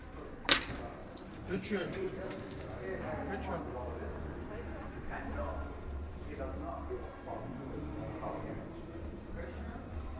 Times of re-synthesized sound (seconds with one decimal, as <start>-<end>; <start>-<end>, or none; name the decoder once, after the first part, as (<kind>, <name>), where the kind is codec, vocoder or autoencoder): 1.0-2.1 (vocoder, BigVGAN v2); 4.1-6.4; 7.5-10.2